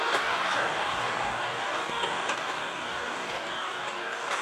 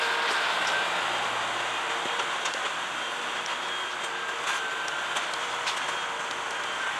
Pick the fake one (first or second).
first